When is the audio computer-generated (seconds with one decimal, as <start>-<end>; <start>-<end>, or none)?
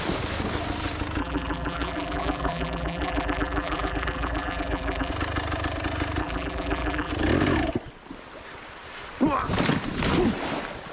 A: 1.2-5.1; 6.2-7.1